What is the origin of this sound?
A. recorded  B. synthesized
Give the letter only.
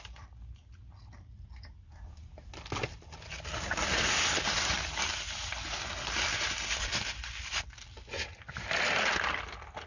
A